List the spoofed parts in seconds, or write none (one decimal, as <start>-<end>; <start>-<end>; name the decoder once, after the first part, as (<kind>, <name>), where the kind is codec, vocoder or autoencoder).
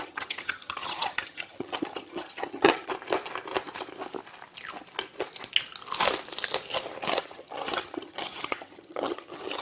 0.0-2.9 (vocoder, HiFi-GAN); 7.1-9.6